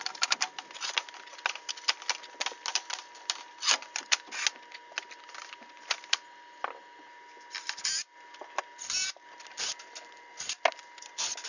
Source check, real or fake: real